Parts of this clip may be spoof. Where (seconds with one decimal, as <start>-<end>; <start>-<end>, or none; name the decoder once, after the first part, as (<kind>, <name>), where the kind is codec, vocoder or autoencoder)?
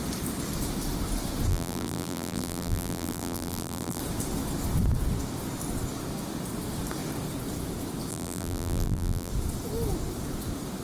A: 1.5-4.0 (vocoder, BigVGAN v2); 8.1-9.3